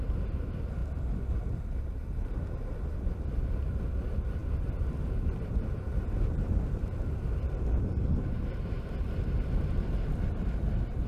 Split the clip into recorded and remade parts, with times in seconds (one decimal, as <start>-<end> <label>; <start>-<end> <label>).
0.0-11.1 recorded